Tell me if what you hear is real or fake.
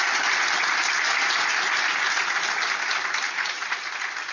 real